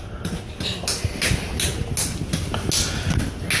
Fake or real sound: real